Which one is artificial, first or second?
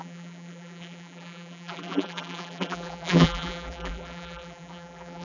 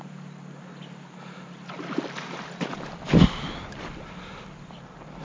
first